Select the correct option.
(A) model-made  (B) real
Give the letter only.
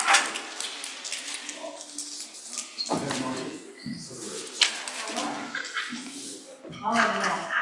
B